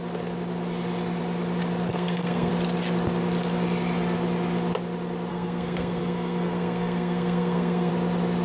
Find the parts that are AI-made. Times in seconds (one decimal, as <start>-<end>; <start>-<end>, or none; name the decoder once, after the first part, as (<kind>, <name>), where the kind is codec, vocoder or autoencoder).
1.9-2.5 (codec, SNAC); 5.3-7.9